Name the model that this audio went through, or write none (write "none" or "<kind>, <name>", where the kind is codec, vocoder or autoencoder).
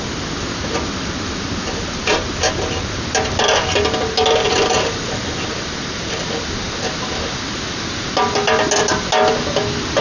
none